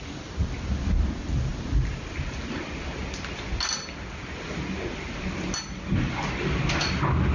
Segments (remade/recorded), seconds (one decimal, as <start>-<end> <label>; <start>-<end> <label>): 0.0-7.3 recorded